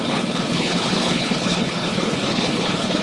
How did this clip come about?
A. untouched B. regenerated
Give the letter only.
B